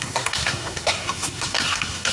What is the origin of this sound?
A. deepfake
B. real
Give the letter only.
A